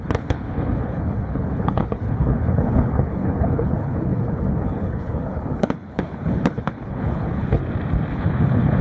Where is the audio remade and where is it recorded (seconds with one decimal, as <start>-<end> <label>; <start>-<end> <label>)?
0.0-7.6 remade; 7.6-8.1 recorded; 8.1-8.8 remade